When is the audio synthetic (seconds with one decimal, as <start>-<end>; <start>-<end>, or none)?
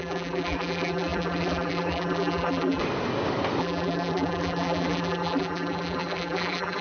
0.0-2.8; 3.6-6.8